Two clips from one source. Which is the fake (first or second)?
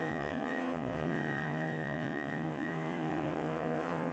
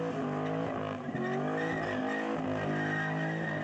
first